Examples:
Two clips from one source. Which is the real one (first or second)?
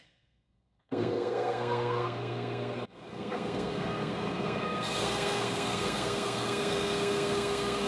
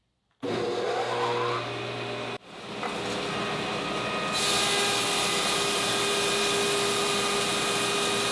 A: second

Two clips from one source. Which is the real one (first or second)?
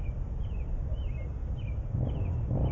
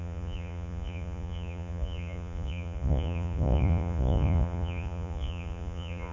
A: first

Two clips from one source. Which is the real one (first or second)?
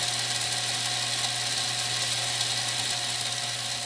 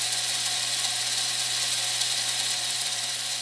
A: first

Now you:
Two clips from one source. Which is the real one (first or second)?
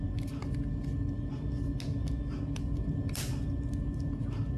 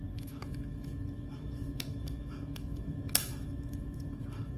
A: first